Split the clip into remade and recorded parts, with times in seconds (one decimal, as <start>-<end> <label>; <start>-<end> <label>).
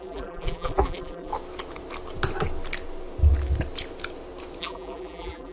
0.0-1.3 remade; 1.3-4.6 recorded; 4.6-5.5 remade